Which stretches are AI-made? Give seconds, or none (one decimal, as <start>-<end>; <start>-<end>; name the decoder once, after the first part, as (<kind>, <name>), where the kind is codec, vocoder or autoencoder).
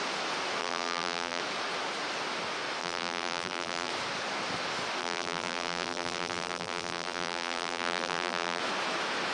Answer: 0.6-1.4 (vocoder, BigVGAN v2); 2.8-3.9; 5.0-8.6